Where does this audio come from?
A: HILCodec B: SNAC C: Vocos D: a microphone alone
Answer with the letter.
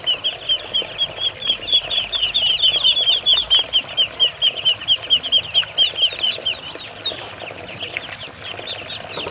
D